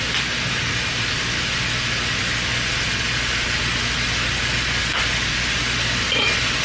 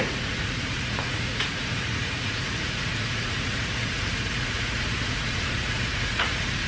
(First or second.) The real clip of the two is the first